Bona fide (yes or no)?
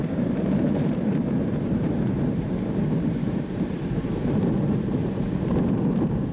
no